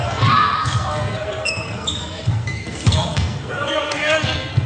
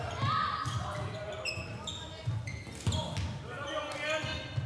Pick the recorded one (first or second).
second